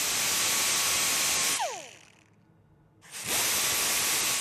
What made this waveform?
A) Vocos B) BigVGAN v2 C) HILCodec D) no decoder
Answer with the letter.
D